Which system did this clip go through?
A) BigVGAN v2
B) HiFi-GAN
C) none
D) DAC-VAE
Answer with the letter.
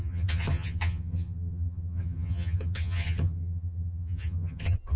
B